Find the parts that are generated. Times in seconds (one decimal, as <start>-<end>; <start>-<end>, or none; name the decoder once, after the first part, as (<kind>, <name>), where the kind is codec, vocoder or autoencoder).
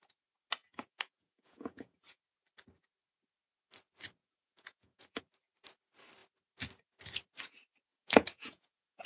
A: 0.6-2.2 (vocoder, Vocos); 4.2-5.2; 7.9-9.1